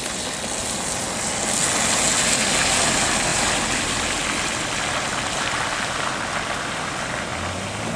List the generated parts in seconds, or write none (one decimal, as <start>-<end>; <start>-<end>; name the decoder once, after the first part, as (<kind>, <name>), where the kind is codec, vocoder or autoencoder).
3.3-6.1 (vocoder, BigVGAN v2)